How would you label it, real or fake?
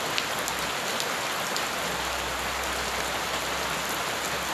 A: real